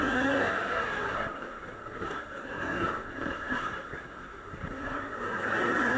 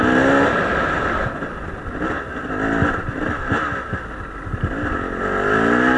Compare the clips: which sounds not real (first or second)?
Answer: first